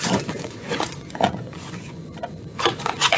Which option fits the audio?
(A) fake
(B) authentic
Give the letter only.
A